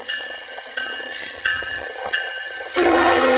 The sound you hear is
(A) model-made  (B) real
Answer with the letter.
A